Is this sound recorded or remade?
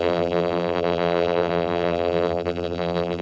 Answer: remade